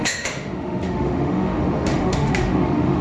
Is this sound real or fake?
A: fake